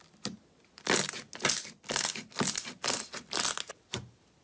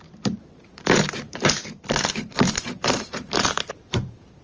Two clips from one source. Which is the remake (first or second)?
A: second